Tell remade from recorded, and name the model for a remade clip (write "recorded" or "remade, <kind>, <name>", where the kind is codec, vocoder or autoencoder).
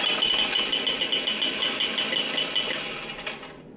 recorded